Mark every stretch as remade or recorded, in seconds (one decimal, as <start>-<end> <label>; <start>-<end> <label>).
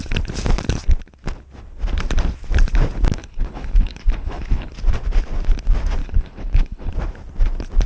0.0-3.2 recorded; 3.2-4.7 remade; 4.7-6.0 recorded; 6.0-6.9 remade; 6.9-7.9 recorded